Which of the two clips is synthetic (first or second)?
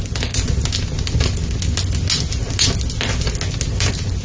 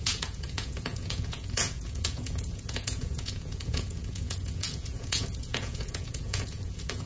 second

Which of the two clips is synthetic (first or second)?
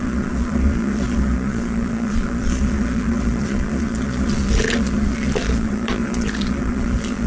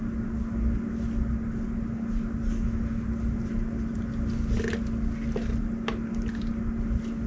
first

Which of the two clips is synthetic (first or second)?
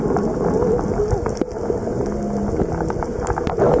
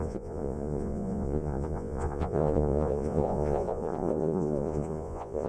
second